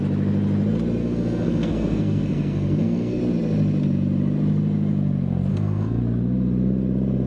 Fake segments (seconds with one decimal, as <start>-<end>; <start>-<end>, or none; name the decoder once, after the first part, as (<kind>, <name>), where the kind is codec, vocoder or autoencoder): 1.0-3.2 (codec, SNAC); 5.5-6.0